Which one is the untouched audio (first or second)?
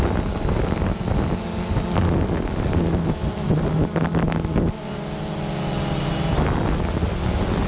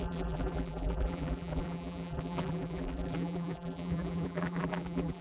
first